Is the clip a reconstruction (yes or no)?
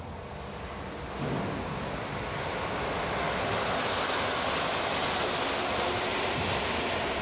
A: no